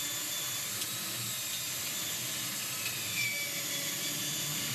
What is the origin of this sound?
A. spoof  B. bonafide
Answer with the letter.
B